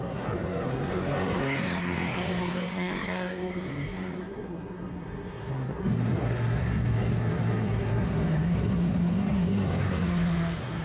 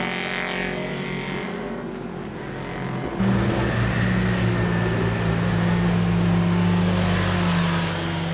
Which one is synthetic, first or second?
first